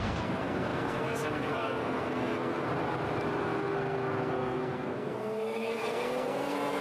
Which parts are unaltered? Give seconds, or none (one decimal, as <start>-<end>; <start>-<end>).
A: 2.7-3.4